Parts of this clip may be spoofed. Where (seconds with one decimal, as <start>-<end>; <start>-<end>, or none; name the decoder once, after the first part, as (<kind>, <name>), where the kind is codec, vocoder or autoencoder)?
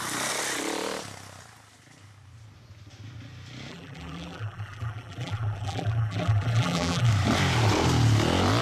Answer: 3.7-7.1 (vocoder, BigVGAN v2)